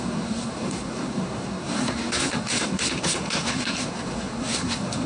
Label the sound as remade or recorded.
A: remade